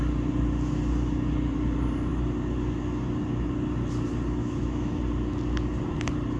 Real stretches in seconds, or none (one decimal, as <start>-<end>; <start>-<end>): 0.0-4.4; 5.0-6.4

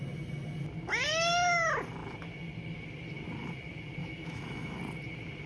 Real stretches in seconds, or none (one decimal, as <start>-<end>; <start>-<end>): 0.0-4.0; 4.8-5.5

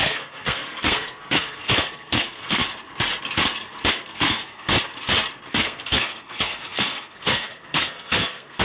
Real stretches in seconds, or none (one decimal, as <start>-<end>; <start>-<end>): 2.6-3.9; 4.7-5.5

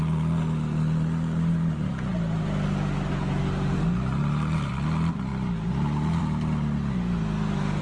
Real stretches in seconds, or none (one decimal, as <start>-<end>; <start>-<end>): 0.0-7.8

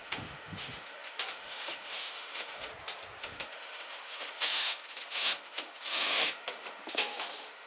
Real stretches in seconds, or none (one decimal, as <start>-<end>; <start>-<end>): 2.7-3.2

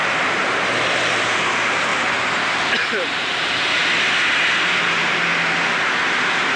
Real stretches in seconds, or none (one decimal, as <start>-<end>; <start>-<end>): 0.0-0.5; 3.8-4.7; 5.3-6.6

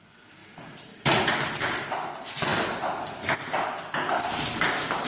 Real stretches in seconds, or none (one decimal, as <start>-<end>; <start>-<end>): 0.0-0.4; 1.3-5.1

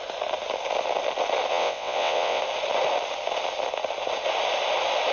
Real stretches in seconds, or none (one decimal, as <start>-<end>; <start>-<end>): 0.0-1.5; 2.4-5.1